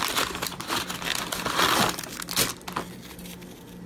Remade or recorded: recorded